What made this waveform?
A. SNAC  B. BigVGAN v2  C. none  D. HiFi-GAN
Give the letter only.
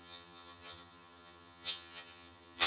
D